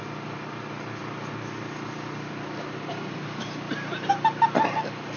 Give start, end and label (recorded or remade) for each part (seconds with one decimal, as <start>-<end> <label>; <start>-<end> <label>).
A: 0.0-5.2 recorded

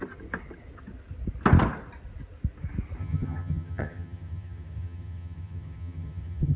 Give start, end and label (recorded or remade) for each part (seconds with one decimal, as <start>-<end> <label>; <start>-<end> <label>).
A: 0.0-3.0 recorded; 3.0-6.6 remade